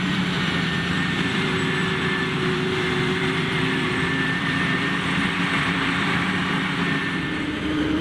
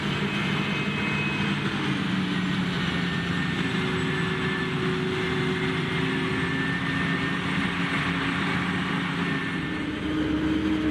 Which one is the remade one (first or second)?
first